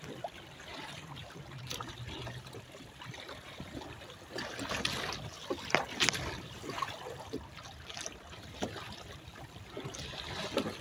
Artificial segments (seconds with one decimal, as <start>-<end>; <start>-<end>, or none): 1.2-1.9